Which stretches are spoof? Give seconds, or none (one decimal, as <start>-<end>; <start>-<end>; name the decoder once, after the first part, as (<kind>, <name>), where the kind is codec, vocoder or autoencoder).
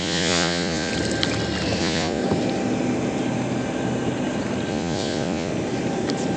0.0-0.9 (vocoder, Vocos); 1.8-2.2; 4.7-5.5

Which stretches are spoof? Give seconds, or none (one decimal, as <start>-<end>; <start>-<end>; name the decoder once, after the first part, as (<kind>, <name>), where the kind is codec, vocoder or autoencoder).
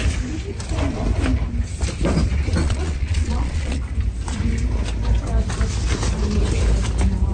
2.6-3.8 (vocoder, Vocos)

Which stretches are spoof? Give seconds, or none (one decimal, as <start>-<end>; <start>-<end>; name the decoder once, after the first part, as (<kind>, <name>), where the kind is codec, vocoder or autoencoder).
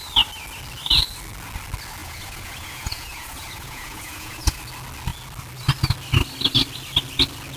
2.0-4.6 (vocoder, Vocos)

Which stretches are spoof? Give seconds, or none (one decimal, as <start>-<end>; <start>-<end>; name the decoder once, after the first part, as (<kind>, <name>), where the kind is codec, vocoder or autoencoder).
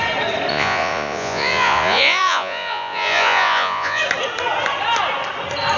0.5-4.0 (vocoder, Vocos)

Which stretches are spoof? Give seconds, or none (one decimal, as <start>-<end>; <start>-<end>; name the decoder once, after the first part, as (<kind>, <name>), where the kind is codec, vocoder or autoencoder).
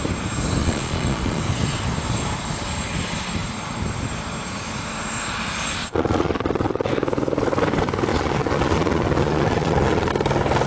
0.6-1.4 (vocoder, Vocos); 5.8-6.9; 8.1-10.1